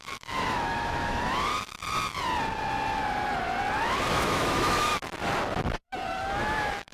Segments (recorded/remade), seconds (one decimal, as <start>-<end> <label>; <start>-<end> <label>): 0.0-1.5 remade; 1.5-4.1 recorded; 4.1-4.9 remade; 4.9-6.4 recorded; 6.4-6.9 remade